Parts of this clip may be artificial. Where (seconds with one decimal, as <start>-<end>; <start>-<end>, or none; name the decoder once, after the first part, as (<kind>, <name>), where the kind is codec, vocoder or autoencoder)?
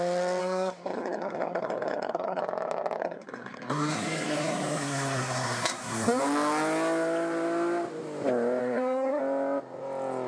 0.4-2.4 (codec, SNAC); 3.0-6.2; 8.6-9.2